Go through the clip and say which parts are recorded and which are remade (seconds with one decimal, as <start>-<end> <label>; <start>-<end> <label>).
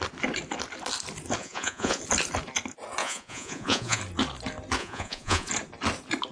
0.0-1.4 recorded; 1.4-2.0 remade; 2.0-3.0 recorded; 3.0-4.0 remade; 4.0-4.8 recorded; 4.8-5.5 remade; 5.5-6.3 recorded